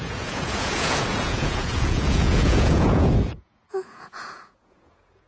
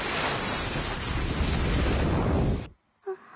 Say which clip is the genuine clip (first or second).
second